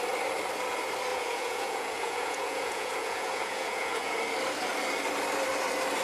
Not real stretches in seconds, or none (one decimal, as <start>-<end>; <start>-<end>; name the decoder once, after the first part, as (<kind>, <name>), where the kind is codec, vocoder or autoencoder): 1.1-4.2 (vocoder, Vocos)

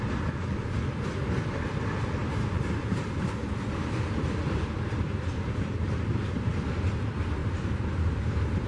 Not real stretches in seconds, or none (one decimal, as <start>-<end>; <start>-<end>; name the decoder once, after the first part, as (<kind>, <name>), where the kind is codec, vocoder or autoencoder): 1.2-1.7 (vocoder, BigVGAN v2); 2.2-6.5; 7.4-8.7

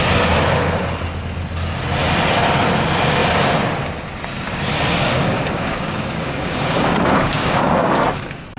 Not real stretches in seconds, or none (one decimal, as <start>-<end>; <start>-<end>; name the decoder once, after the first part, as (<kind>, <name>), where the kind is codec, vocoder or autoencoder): 5.0-8.2 (codec, DAC)